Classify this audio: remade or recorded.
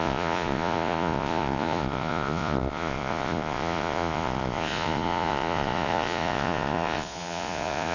remade